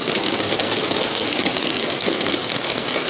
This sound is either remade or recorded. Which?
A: remade